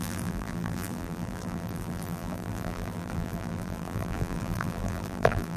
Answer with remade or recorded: remade